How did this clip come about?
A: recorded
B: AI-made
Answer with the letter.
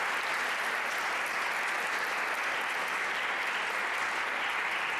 A